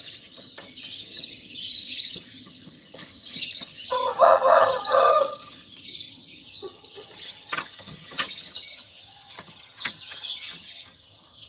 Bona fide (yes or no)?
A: no